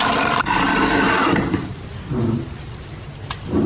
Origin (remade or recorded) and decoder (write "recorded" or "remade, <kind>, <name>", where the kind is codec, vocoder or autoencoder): recorded